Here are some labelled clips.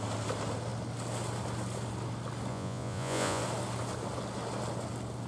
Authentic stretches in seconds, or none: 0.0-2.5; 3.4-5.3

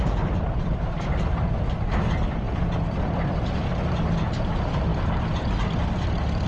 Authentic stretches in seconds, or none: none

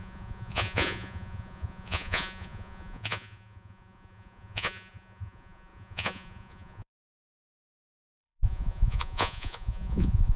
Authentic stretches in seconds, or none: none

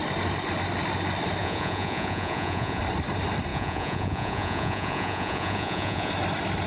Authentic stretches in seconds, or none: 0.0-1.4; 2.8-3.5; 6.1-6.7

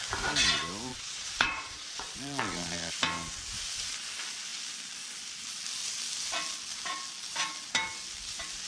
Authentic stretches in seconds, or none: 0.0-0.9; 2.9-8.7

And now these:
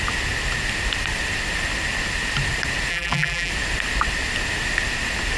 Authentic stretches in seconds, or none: 0.0-2.9; 3.5-5.4

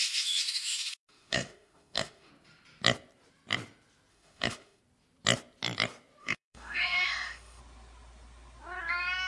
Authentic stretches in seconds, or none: 2.3-4.1; 4.8-6.2; 7.6-9.3

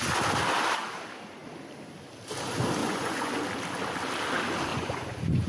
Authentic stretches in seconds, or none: 0.0-2.8; 3.3-4.7